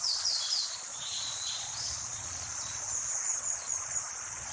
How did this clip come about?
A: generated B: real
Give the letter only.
A